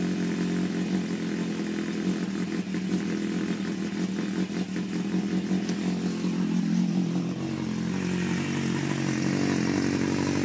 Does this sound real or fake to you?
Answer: real